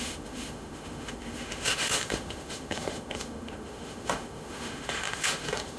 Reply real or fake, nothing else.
fake